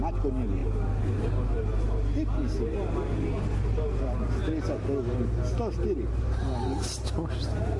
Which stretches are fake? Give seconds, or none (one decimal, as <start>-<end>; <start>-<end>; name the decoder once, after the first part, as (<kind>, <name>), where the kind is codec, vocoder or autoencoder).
none